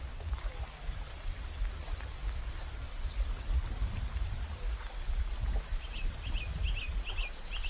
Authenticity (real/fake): real